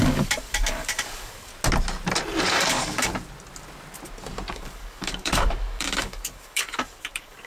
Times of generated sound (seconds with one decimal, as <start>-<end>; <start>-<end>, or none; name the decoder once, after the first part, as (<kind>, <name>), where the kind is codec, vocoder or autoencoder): 0.0-1.5 (codec, DAC); 2.4-3.1; 4.5-7.5